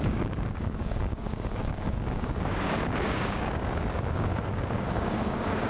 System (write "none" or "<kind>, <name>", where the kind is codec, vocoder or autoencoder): codec, DAC